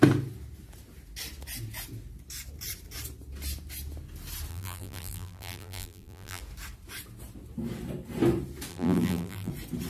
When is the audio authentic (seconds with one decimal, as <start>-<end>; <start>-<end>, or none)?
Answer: 0.0-4.5; 6.4-8.7; 9.5-9.9

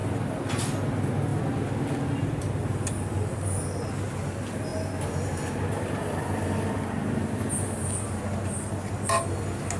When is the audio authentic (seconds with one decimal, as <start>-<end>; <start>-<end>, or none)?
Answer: 0.5-9.8

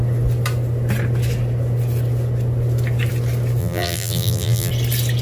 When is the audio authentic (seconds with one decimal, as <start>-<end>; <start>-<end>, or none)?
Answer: 0.0-3.6; 4.7-5.2

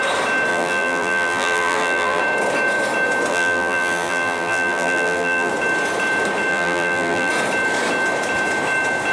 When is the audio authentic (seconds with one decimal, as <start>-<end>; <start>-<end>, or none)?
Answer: 0.0-0.5; 2.2-3.3; 5.5-6.5; 7.3-9.1

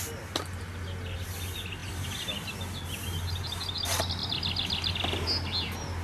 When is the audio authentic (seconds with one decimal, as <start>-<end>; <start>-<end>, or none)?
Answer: 0.0-6.0